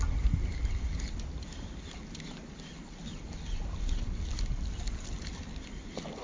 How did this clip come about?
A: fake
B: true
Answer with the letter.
B